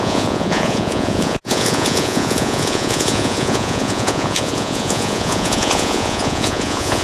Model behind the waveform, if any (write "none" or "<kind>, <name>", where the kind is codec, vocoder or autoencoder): vocoder, Vocos